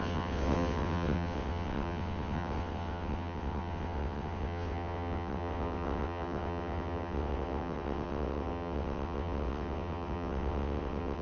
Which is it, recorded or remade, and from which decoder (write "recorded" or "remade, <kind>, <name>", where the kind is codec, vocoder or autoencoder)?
remade, vocoder, WaveNeXt